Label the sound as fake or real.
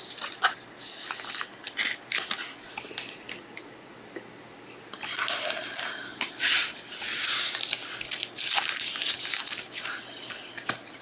real